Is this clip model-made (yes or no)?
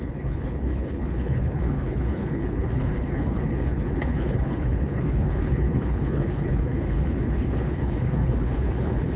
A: yes